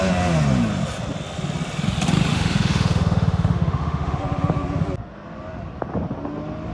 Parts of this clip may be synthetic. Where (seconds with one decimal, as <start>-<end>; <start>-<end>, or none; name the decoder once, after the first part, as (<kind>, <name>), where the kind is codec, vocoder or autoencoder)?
2.3-4.2 (autoencoder, DAC-VAE)